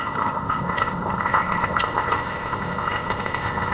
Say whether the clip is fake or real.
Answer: fake